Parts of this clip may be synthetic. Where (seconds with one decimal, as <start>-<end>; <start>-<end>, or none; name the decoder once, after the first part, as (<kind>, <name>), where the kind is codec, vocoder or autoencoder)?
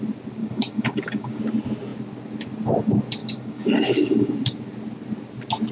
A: 0.4-1.4 (codec, DAC); 3.2-4.3